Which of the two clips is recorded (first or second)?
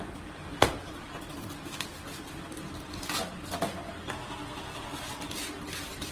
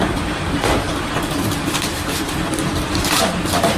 first